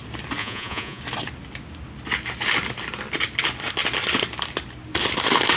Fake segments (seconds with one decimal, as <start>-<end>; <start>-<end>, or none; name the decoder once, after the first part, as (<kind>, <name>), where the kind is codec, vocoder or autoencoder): 0.4-1.0 (vocoder, Vocos)